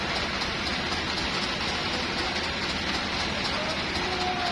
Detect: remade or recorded recorded